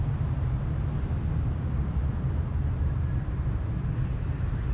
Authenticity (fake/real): real